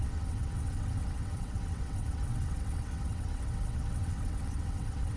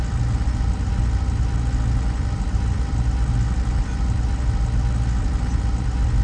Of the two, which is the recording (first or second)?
second